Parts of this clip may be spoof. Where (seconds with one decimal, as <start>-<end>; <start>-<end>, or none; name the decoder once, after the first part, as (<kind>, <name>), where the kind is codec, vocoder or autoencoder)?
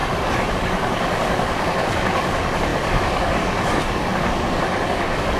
0.0-5.4 (codec, DAC)